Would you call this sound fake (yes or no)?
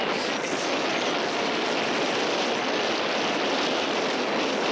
no